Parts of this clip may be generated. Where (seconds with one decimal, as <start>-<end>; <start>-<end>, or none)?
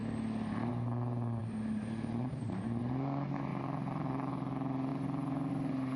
1.4-2.8; 3.5-4.3